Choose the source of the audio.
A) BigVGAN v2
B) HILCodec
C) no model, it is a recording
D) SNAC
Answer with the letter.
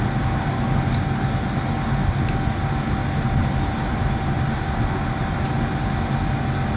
C